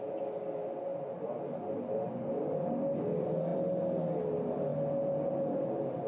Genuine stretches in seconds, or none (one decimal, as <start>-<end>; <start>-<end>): 0.0-6.1

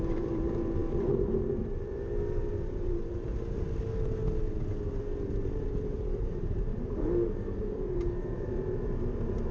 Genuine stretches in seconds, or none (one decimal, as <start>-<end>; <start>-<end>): 3.3-4.9; 6.7-7.6